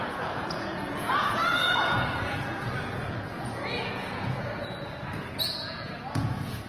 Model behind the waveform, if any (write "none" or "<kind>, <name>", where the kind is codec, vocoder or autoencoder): vocoder, Vocos